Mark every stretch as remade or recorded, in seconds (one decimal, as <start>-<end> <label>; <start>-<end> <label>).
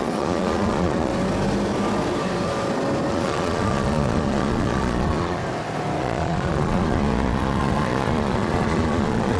0.0-1.1 remade; 1.1-3.1 recorded; 3.1-5.4 remade; 5.4-6.0 recorded; 6.0-9.4 remade